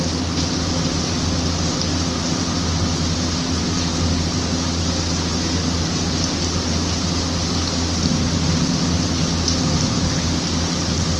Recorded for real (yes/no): yes